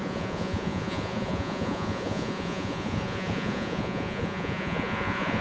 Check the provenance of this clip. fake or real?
fake